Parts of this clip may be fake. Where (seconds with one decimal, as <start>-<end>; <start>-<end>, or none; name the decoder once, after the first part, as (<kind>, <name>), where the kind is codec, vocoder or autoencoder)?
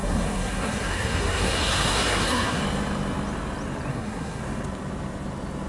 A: 0.0-2.6 (codec, SNAC); 3.9-4.4